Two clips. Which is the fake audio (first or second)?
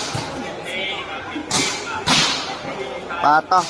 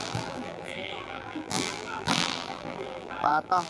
second